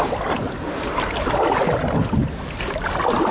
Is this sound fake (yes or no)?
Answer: no